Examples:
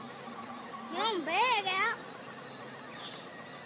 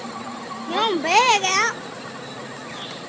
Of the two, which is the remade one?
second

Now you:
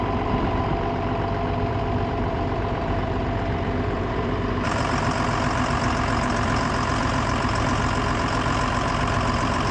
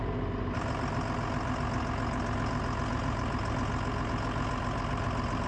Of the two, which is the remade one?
first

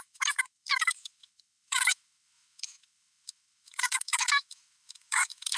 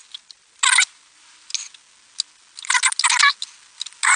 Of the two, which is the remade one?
first